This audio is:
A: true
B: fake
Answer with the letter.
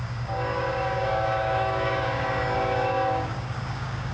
B